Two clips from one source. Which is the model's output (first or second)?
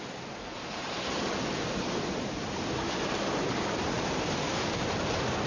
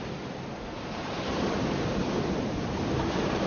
second